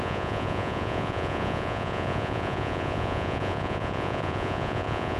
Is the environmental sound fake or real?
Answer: fake